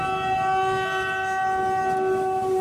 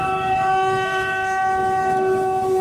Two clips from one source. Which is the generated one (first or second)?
second